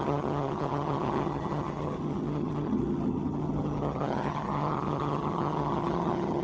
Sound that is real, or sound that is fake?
fake